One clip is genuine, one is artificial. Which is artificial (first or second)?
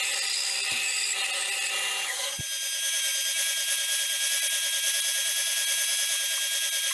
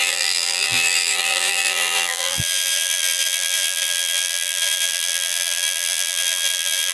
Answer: second